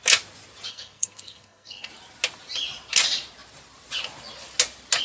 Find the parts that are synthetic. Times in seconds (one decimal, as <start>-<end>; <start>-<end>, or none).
0.7-1.9